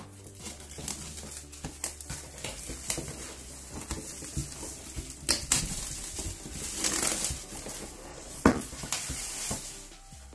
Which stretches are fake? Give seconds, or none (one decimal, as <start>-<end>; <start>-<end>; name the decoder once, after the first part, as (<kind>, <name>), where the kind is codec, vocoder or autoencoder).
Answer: 8.1-8.7 (vocoder, Vocos)